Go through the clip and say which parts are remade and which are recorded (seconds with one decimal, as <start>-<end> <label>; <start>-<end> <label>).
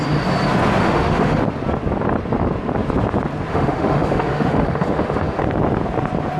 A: 0.0-0.8 recorded; 0.8-1.4 remade; 1.4-3.5 recorded; 3.5-5.4 remade; 5.4-6.4 recorded